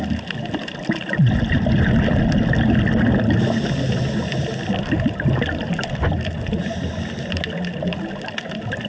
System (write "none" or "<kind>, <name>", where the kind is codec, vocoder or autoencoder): none